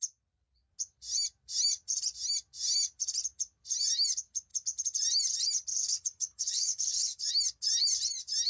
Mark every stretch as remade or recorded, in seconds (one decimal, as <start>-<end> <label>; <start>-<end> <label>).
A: 0.0-5.7 recorded; 5.7-7.3 remade; 7.3-8.5 recorded